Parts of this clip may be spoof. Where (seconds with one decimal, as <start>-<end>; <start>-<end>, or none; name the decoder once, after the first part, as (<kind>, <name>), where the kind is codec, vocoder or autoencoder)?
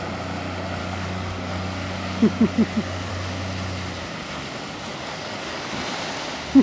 0.8-3.1 (codec, DAC); 4.9-5.8